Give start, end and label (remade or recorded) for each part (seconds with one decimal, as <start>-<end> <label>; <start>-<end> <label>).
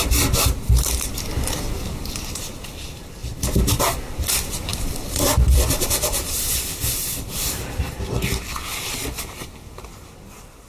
0.0-4.7 recorded; 4.7-7.8 remade; 7.8-10.7 recorded